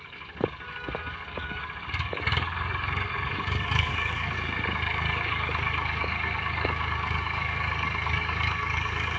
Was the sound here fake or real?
fake